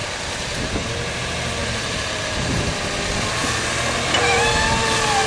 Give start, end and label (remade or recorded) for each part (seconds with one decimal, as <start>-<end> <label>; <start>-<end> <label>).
0.0-0.6 remade; 0.6-1.6 recorded; 1.6-2.6 remade; 2.6-5.3 recorded